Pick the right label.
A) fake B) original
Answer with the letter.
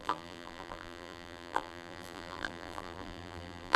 A